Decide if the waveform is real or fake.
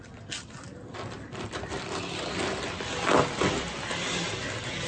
real